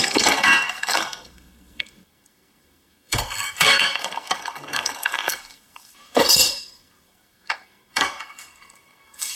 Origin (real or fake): fake